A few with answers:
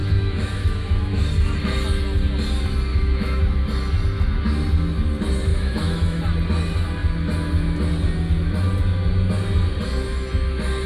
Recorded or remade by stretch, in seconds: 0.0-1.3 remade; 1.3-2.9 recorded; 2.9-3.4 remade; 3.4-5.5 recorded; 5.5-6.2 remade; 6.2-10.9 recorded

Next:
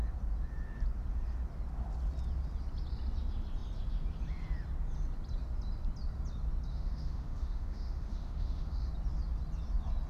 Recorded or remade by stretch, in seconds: 0.0-6.7 recorded; 6.7-8.9 remade; 8.9-10.1 recorded

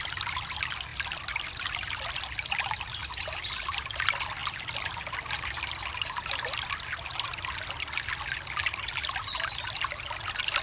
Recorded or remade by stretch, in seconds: 0.0-0.9 recorded; 0.9-1.7 remade; 1.7-10.6 recorded

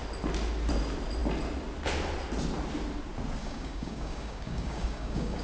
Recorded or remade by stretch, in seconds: 0.0-3.4 recorded; 3.4-5.4 remade

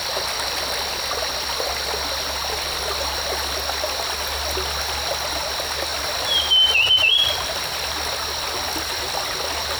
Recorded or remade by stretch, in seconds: 0.0-9.8 recorded